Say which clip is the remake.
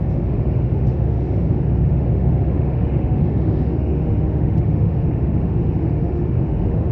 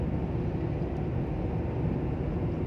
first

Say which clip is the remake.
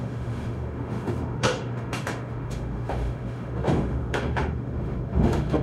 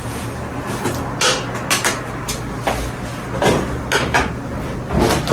first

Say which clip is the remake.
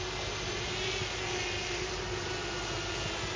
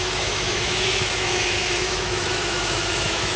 second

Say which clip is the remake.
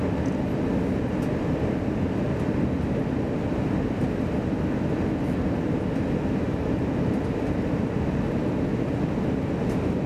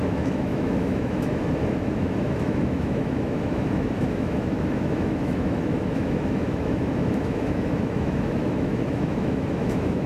second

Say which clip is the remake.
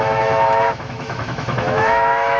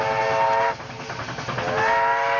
first